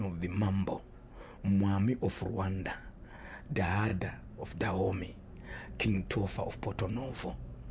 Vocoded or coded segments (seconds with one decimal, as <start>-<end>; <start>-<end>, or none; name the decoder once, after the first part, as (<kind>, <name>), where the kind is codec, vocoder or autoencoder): 3.9-6.5 (vocoder, Vocos)